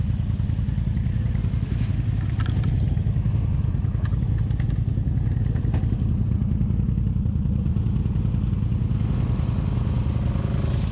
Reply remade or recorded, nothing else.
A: recorded